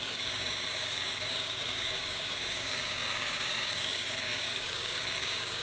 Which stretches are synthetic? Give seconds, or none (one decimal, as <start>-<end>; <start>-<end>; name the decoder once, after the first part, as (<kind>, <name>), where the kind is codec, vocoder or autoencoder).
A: 0.0-5.6 (codec, DAC)

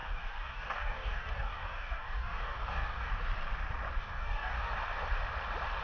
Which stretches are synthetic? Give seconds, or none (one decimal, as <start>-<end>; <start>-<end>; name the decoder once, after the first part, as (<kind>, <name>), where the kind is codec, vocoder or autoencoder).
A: 0.0-3.1 (codec, DAC); 4.0-4.7

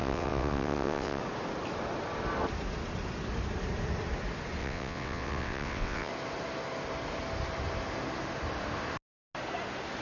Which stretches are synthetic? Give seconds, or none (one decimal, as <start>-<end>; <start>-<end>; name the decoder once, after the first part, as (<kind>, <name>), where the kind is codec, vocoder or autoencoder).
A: 0.0-1.2 (vocoder, WaveNeXt); 4.6-6.1